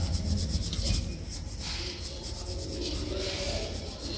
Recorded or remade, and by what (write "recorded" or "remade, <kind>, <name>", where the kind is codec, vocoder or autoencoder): recorded